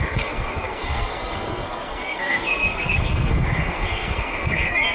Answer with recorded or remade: remade